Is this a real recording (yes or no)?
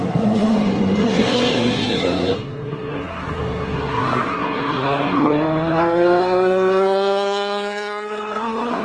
no